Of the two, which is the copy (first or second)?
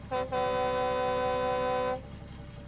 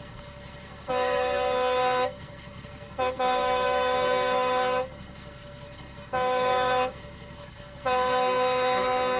second